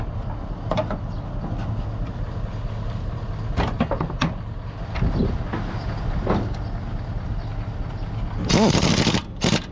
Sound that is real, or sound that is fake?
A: real